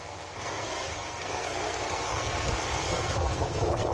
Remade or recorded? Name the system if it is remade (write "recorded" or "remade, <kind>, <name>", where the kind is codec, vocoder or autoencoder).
remade, codec, SNAC